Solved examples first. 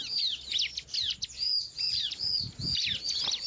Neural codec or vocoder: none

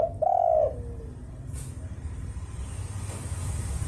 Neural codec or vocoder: none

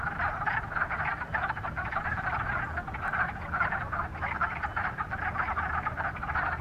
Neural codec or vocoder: none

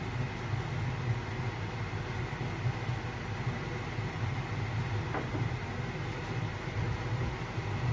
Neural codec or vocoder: none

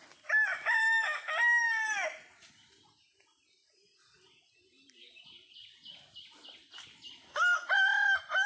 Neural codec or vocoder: none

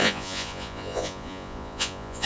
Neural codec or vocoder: vocoder, Vocos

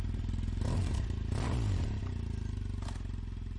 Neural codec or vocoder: none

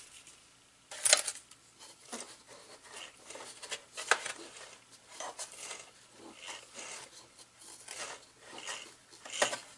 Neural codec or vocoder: none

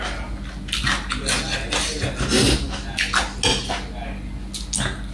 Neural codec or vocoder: none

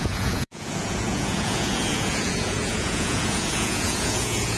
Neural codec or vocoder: vocoder, Vocos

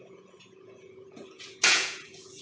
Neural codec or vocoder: vocoder, Vocos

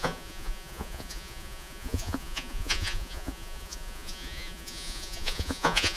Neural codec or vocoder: vocoder, Vocos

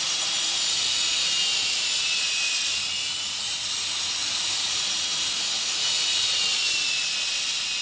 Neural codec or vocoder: vocoder, Vocos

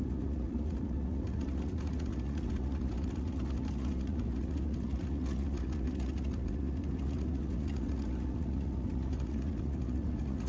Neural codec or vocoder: vocoder, Vocos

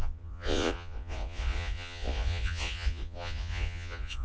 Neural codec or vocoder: vocoder, Vocos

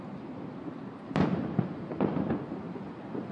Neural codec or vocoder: none